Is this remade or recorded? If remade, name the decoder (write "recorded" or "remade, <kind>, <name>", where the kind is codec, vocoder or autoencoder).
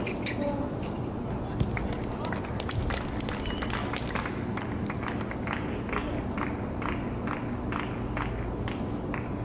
recorded